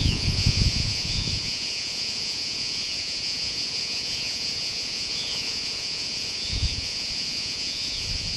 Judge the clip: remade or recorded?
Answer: remade